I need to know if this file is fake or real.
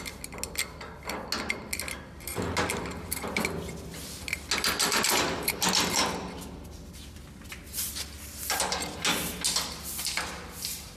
real